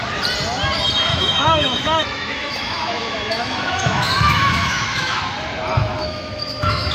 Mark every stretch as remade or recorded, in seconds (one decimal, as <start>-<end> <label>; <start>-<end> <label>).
0.0-1.1 recorded; 1.1-5.2 remade; 5.2-5.8 recorded; 5.8-6.9 remade